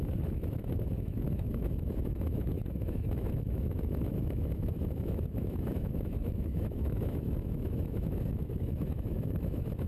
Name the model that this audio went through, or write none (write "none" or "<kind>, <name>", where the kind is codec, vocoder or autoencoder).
autoencoder, DAC-VAE